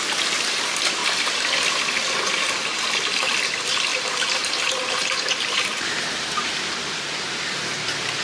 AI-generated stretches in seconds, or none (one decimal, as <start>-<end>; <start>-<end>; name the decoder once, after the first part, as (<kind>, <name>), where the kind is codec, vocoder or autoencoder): 3.9-7.3 (vocoder, BigVGAN v2)